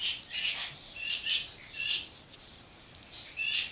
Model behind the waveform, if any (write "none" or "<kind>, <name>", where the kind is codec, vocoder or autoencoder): none